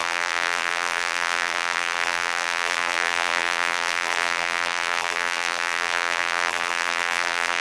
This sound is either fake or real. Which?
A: fake